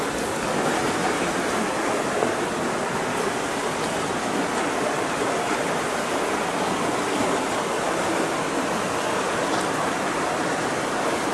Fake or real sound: real